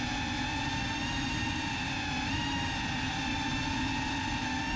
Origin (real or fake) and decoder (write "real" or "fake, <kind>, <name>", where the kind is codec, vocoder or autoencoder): real